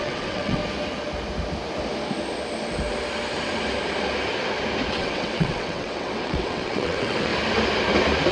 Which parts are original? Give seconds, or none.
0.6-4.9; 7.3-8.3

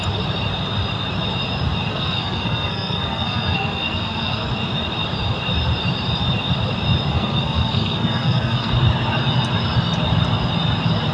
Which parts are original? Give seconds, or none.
0.0-1.9; 4.5-7.1; 8.7-11.1